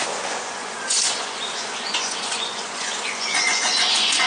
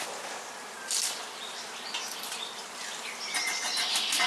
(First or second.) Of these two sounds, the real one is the second